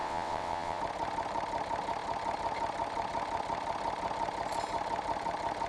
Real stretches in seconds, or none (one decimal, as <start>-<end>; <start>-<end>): 0.8-5.7